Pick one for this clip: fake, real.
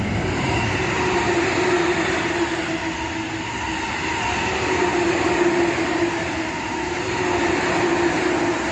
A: real